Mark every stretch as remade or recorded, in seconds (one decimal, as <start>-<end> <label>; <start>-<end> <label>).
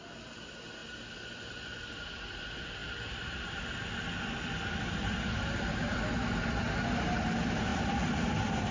0.0-8.7 recorded